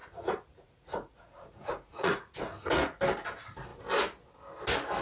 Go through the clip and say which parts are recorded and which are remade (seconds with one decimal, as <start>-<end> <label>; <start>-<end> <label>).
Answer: 0.0-3.0 remade; 3.0-5.0 recorded